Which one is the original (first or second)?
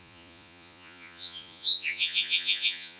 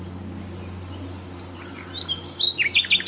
second